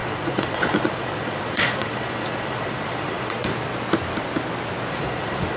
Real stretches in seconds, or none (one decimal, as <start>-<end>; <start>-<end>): 3.5-4.9